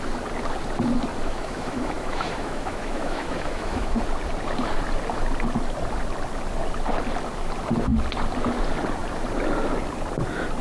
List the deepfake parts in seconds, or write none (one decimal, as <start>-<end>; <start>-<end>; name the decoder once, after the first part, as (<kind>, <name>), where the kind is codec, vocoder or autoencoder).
1.2-4.0 (autoencoder, DAC-VAE)